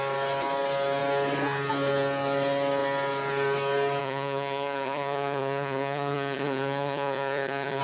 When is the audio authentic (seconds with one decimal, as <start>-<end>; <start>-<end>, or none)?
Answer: 0.0-4.0